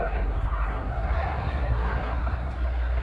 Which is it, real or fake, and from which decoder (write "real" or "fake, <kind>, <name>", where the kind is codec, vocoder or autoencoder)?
fake, codec, SNAC